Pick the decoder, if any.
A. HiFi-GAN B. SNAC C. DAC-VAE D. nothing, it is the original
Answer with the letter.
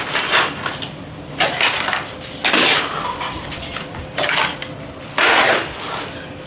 D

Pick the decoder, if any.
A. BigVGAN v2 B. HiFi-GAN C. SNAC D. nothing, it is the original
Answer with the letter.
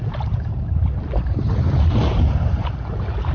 A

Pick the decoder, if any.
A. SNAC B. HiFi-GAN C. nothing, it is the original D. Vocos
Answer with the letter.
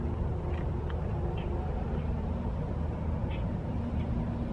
C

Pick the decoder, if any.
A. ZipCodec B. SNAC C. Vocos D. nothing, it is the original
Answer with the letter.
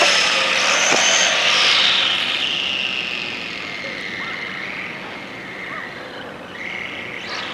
D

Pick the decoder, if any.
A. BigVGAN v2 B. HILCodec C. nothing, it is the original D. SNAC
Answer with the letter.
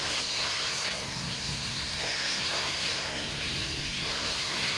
D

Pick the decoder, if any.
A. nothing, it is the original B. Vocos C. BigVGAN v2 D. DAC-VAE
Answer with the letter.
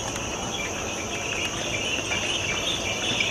A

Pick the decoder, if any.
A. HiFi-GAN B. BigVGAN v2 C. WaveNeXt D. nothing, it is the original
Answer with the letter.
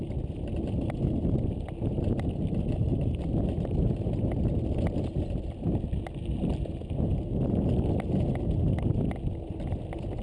D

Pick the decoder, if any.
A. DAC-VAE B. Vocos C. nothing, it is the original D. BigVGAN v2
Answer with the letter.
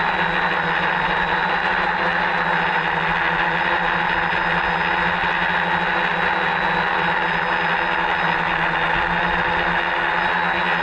C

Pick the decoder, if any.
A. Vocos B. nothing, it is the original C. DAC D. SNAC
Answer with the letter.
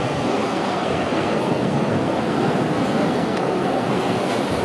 D